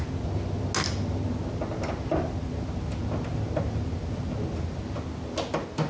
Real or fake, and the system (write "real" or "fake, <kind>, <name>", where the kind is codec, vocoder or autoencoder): real